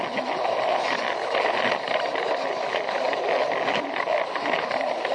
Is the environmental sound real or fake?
real